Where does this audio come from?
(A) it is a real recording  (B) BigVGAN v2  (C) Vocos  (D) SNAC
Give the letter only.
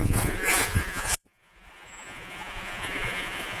C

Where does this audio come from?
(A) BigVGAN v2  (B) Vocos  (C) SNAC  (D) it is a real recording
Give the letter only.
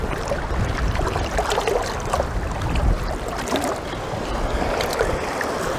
A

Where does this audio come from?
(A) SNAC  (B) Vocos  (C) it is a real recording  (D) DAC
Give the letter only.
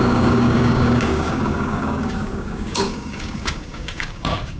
D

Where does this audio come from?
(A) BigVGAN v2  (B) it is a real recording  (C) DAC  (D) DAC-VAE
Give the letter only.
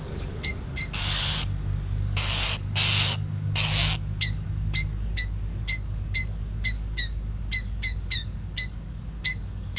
C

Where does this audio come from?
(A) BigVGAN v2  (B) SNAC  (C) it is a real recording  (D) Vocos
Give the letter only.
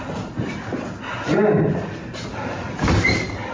A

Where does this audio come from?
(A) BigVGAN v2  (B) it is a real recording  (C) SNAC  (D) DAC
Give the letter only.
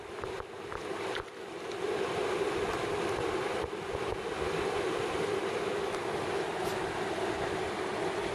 B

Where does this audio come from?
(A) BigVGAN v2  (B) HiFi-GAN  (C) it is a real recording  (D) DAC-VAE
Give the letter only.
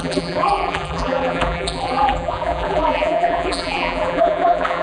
A